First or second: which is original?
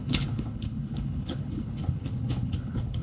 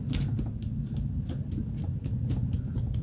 second